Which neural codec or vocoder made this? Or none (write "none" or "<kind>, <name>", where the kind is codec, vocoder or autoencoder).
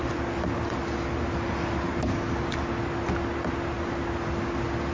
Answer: none